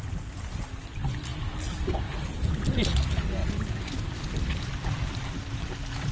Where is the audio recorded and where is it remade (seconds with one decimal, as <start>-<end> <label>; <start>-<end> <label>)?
0.0-6.1 recorded